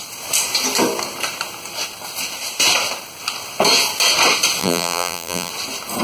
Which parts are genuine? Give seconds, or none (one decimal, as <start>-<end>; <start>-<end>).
0.0-4.6; 5.5-6.0